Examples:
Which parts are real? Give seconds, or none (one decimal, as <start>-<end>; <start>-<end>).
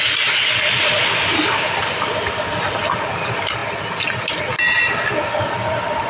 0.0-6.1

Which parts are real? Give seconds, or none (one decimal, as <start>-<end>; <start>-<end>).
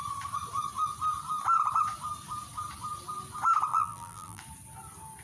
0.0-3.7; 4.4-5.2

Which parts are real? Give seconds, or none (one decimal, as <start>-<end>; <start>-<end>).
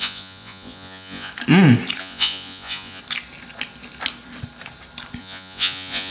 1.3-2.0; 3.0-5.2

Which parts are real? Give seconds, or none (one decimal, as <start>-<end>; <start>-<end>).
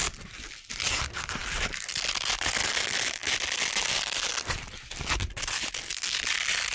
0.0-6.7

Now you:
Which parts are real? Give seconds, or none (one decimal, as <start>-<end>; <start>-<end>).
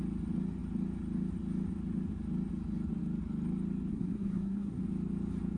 0.0-3.9; 4.8-5.6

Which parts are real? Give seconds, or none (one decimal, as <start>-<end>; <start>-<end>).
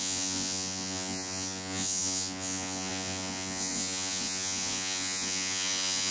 none